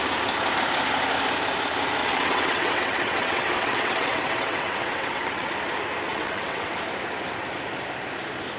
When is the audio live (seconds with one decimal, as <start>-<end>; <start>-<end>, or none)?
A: 0.0-2.0; 5.5-6.1; 6.7-8.6